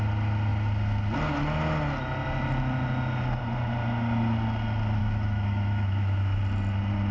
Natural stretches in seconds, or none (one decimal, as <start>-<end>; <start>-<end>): 0.0-5.0; 6.4-7.1